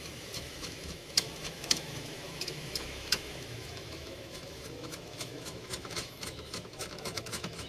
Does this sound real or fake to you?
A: fake